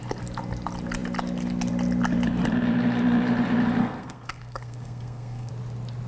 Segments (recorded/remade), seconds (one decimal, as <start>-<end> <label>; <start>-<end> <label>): 0.0-3.8 recorded; 3.8-5.5 remade; 5.5-6.1 recorded